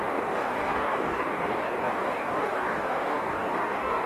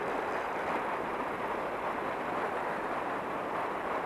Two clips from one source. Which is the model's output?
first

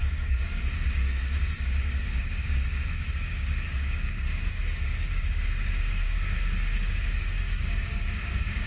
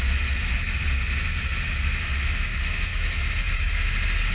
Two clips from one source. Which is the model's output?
first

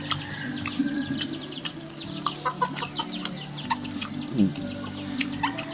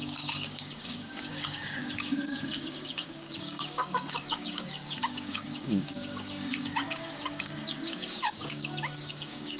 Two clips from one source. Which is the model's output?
second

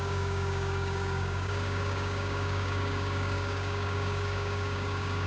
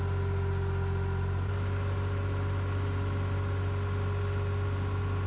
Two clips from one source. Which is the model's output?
first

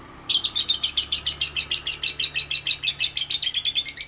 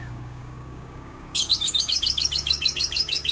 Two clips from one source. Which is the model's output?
second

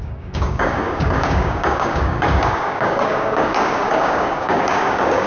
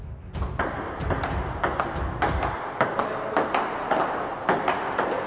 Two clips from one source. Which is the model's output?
first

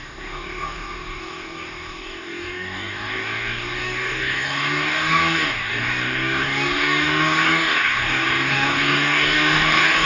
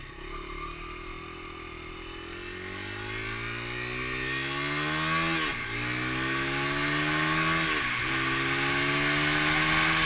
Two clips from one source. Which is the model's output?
first